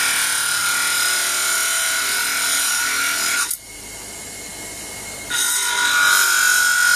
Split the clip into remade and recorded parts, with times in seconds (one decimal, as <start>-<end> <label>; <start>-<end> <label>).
0.0-7.0 recorded